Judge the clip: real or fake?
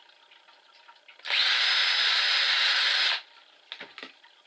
real